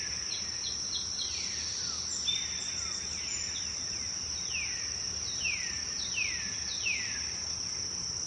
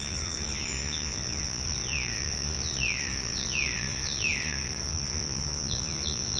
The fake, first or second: second